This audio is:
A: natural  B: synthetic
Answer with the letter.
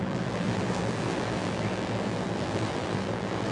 B